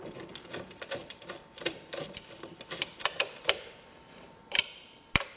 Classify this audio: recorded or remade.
remade